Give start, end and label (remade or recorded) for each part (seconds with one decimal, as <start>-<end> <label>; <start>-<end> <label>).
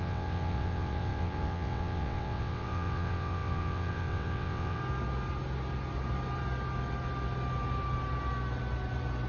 0.0-4.8 remade; 4.8-9.3 recorded